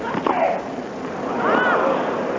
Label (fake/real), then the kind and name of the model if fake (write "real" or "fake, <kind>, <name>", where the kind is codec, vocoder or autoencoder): real